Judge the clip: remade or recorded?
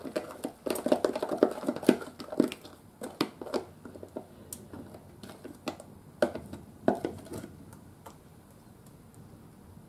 recorded